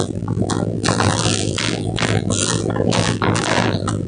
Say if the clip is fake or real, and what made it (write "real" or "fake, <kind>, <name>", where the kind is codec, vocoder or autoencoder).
fake, vocoder, BigVGAN v2